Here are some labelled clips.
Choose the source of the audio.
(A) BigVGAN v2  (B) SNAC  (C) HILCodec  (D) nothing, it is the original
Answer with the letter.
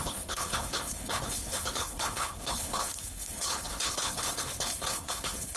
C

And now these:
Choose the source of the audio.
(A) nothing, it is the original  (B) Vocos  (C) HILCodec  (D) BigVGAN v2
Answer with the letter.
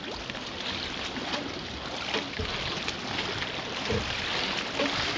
A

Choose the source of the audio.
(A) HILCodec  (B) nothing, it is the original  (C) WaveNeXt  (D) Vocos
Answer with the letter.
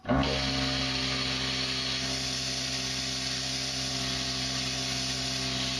B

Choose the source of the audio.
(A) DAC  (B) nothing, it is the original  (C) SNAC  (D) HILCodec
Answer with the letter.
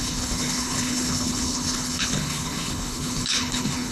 D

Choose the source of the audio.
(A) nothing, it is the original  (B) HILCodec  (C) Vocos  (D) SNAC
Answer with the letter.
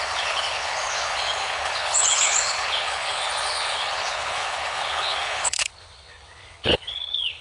B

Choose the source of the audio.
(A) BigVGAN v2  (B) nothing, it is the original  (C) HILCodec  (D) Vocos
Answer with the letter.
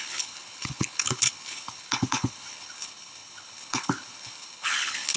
C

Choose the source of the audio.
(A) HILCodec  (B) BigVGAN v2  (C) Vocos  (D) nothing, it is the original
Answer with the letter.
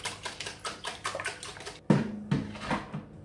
D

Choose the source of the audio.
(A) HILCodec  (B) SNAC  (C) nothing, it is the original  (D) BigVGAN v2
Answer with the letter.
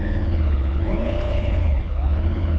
A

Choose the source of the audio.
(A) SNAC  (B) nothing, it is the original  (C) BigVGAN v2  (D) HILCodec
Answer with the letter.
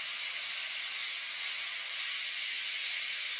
B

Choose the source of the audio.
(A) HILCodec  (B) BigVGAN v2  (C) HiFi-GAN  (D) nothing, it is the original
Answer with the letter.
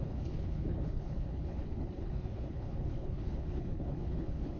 A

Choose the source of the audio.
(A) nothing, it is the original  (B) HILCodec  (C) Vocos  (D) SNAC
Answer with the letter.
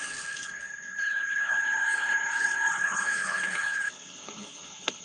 B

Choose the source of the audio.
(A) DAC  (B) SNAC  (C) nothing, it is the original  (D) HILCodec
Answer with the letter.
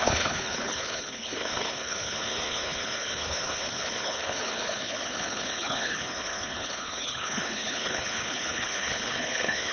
D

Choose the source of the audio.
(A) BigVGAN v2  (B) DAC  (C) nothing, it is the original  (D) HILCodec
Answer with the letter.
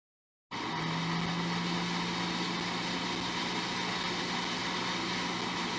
C